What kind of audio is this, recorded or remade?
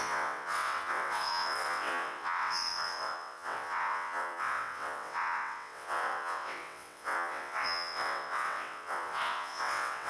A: remade